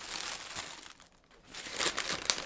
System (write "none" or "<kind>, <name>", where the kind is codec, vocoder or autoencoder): none